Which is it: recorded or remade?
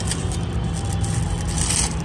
recorded